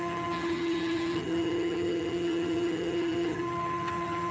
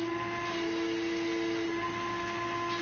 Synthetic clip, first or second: first